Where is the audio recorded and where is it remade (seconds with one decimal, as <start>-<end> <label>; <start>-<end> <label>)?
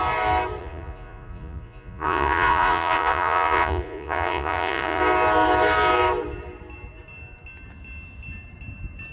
0.0-0.6 recorded; 0.6-5.0 remade; 5.0-9.1 recorded